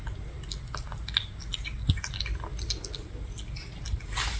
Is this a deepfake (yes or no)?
no